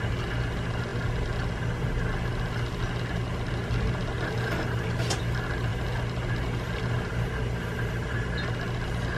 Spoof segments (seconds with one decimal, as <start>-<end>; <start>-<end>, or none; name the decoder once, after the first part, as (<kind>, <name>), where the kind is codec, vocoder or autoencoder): none